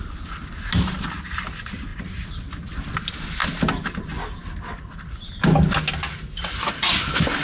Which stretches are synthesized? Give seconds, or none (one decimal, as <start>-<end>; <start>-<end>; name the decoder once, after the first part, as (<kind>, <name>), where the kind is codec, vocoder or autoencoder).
none